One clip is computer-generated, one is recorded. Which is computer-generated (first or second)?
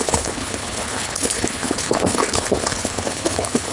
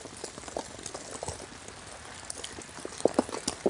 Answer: first